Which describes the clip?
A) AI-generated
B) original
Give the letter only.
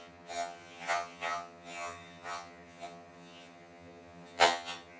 A